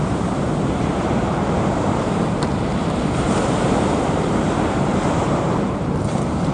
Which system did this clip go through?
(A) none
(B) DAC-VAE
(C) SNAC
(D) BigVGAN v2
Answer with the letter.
D